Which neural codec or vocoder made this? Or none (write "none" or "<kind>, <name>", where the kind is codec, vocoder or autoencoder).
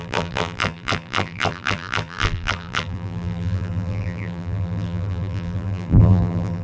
vocoder, BigVGAN v2